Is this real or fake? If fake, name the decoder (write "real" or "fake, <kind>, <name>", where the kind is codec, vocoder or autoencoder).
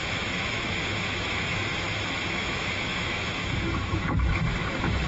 fake, autoencoder, DAC-VAE